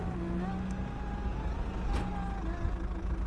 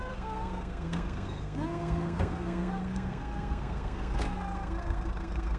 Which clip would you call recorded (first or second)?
first